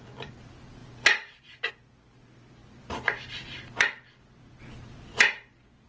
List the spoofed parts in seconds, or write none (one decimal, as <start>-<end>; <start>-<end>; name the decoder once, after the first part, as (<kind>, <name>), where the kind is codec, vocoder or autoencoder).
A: none